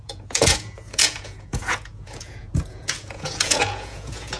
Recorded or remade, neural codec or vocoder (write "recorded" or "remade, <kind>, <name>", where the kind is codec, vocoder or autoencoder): remade, vocoder, Vocos